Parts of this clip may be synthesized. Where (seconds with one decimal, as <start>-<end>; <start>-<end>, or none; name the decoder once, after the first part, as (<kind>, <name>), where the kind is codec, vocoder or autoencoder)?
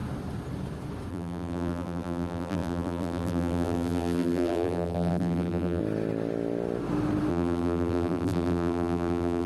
1.1-5.8 (vocoder, BigVGAN v2); 7.3-9.5